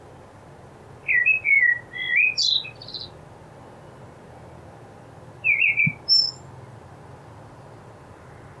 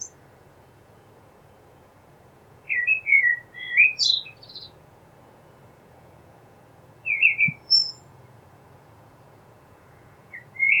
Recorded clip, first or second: first